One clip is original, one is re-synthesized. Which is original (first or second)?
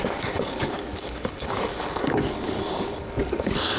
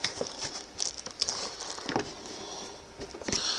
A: second